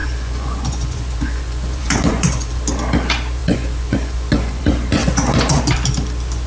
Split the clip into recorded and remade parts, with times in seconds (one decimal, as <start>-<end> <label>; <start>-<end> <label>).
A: 0.0-2.5 remade; 2.5-3.4 recorded; 3.4-4.6 remade; 4.6-5.0 recorded; 5.0-5.6 remade; 5.6-6.5 recorded